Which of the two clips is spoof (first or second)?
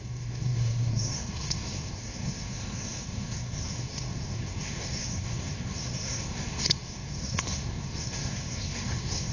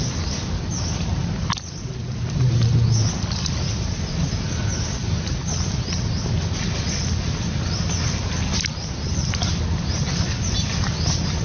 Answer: first